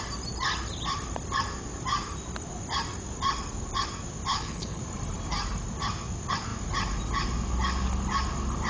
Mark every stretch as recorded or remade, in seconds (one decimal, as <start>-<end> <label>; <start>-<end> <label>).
0.0-4.3 recorded; 4.3-4.8 remade; 4.8-8.7 recorded